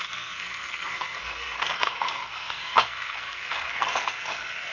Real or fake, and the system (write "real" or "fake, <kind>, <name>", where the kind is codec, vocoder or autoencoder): fake, codec, SNAC